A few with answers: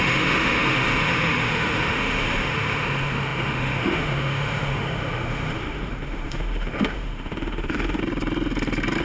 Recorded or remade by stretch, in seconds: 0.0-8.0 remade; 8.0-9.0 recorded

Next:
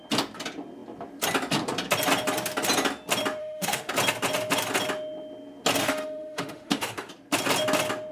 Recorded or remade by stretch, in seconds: 0.0-3.4 recorded; 3.4-3.9 remade; 3.9-5.8 recorded; 5.8-7.1 remade; 7.1-8.1 recorded

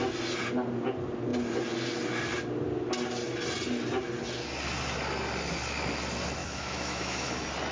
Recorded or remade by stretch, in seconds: 0.0-6.4 recorded; 6.4-7.3 remade; 7.3-7.7 recorded

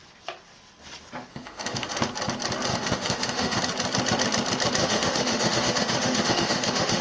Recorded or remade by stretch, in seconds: 0.0-1.3 recorded; 1.3-2.0 remade; 2.0-2.7 recorded; 2.7-3.6 remade; 3.6-4.8 recorded; 4.8-7.0 remade